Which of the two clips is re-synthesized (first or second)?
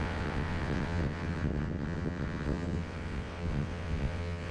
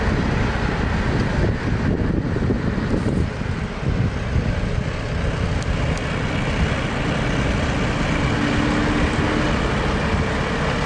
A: first